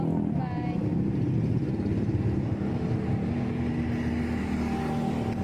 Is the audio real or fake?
real